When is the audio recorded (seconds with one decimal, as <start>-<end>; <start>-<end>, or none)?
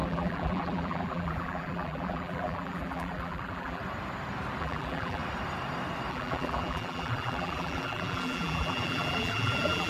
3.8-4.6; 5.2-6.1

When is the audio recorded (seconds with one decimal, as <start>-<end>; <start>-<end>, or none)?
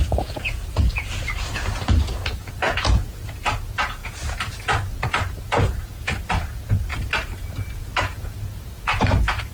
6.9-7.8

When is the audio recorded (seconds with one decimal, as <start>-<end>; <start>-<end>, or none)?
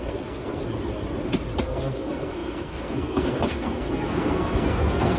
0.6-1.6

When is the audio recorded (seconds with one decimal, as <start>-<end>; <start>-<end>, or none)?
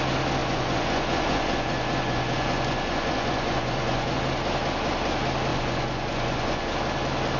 0.0-0.4; 4.2-5.5; 6.7-7.4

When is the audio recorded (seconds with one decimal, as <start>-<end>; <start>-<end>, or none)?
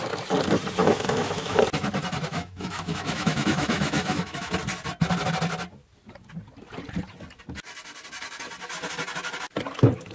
0.0-0.8; 1.6-2.3; 4.5-10.1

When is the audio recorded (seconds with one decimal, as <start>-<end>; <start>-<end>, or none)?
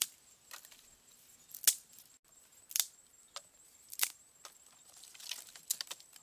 0.0-6.2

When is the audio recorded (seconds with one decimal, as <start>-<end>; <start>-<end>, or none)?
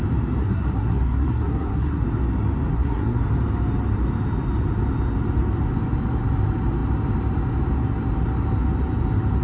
0.0-0.4; 2.0-2.7; 3.2-9.4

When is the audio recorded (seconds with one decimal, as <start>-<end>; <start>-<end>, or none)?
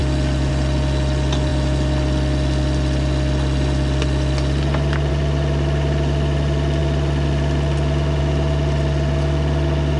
0.0-10.0